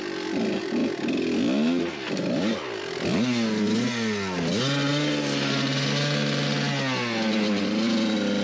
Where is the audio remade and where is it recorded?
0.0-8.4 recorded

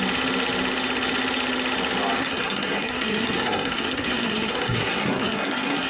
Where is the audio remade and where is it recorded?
0.0-2.2 recorded; 2.2-5.9 remade

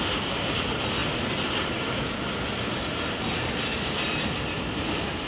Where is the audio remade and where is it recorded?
0.0-5.3 recorded

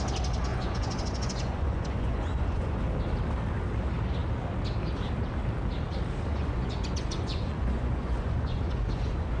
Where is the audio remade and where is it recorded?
0.0-0.5 recorded; 0.5-2.8 remade; 2.8-6.3 recorded; 6.3-9.4 remade

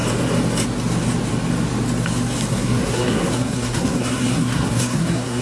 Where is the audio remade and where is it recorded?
0.0-2.5 recorded; 2.5-5.4 remade

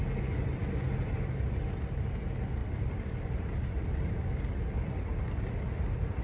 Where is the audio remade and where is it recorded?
0.0-2.6 recorded; 2.6-6.2 remade